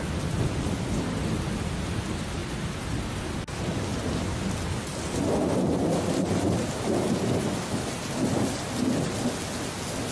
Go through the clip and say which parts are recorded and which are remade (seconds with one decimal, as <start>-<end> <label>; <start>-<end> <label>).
0.0-10.1 recorded

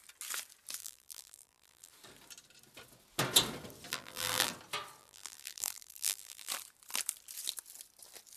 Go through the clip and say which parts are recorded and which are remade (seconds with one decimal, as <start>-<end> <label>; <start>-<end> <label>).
0.0-0.8 recorded; 0.8-1.9 remade; 1.9-3.9 recorded; 3.9-4.5 remade; 4.5-5.0 recorded; 5.0-6.5 remade; 6.5-8.4 recorded